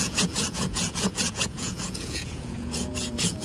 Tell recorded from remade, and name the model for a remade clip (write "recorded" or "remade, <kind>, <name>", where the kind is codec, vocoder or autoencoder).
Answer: remade, vocoder, Vocos